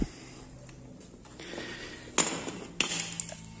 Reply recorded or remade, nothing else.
recorded